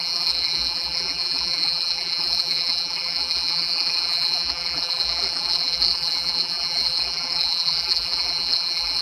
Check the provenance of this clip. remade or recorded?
remade